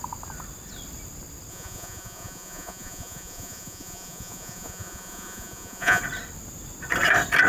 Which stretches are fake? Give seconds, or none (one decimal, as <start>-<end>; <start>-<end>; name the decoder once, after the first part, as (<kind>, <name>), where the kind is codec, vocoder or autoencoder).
1.5-6.0 (vocoder, Vocos)